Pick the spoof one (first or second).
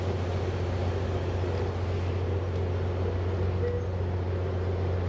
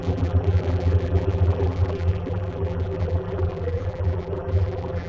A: second